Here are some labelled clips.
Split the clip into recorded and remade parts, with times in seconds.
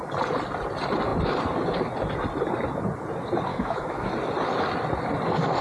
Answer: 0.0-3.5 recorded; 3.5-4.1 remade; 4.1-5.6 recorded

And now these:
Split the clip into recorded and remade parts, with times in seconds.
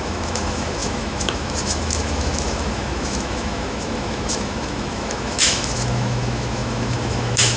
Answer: 0.0-7.6 remade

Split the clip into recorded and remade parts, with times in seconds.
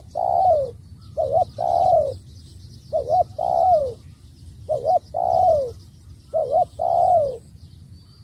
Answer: 0.0-6.4 recorded; 6.4-7.7 remade; 7.7-8.2 recorded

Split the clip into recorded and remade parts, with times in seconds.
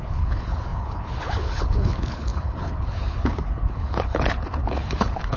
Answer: 0.0-5.4 remade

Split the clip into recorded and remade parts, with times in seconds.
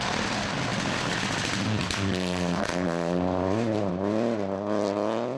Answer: 0.0-5.4 recorded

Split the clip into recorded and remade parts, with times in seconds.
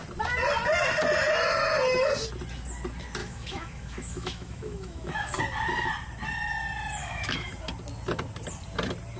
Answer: 0.0-3.2 recorded; 3.2-5.4 remade; 5.4-7.0 recorded; 7.0-7.5 remade; 7.5-9.2 recorded